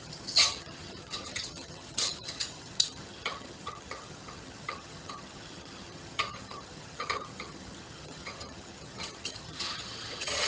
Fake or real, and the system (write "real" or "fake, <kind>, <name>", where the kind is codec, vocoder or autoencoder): fake, vocoder, HiFi-GAN